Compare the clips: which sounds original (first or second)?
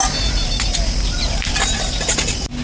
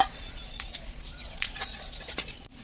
first